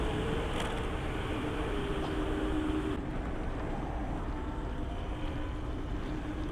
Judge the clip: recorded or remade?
recorded